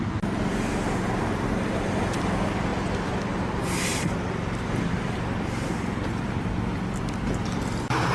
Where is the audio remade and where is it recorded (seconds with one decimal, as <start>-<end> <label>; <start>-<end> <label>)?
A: 0.0-3.9 recorded; 3.9-7.0 remade; 7.0-8.1 recorded